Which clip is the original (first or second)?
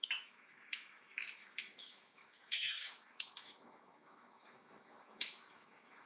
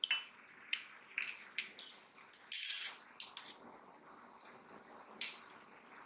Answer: second